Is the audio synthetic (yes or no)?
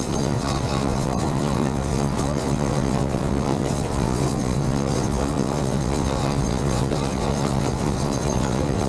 yes